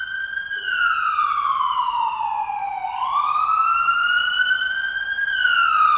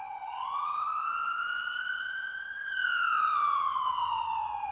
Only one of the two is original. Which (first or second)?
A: first